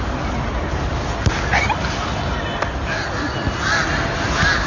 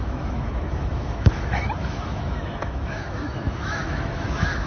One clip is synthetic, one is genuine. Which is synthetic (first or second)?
second